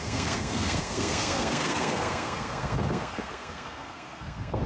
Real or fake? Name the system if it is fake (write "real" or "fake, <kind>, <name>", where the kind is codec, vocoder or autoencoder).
fake, codec, SNAC